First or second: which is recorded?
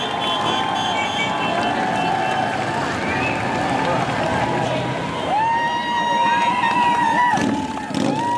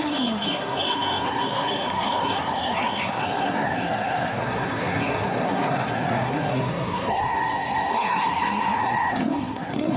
first